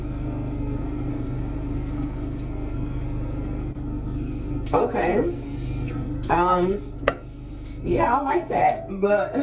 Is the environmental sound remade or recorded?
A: remade